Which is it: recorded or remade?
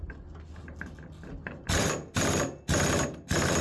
recorded